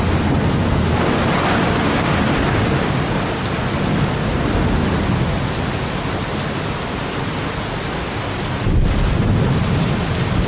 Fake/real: real